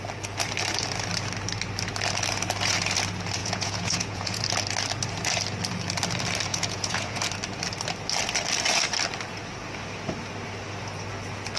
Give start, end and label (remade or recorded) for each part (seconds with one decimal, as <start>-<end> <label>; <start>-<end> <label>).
0.0-3.4 recorded; 3.4-4.4 remade; 4.4-6.5 recorded; 6.5-7.2 remade; 7.2-11.6 recorded